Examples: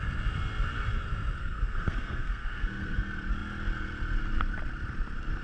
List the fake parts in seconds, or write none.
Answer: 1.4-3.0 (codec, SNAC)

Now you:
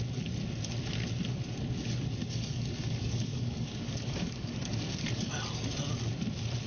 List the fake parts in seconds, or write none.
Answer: 2.2-5.3 (codec, DAC)

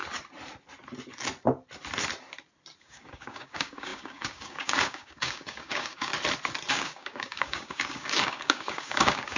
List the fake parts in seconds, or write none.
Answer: 2.8-6.1 (codec, DAC); 6.7-9.4